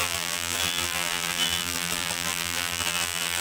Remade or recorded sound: remade